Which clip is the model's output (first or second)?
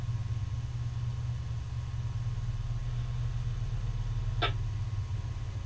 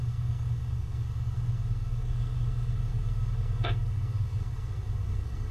second